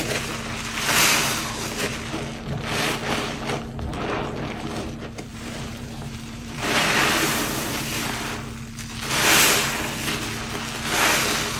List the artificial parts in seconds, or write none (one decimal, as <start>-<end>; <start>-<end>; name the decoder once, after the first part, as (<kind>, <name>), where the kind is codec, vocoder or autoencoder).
5.3-7.9 (vocoder, BigVGAN v2)